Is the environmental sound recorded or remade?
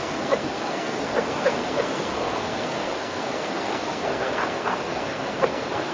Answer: remade